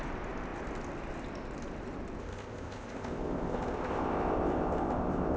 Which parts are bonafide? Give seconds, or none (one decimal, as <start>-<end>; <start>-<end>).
0.0-2.2